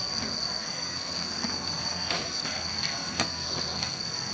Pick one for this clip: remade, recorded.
remade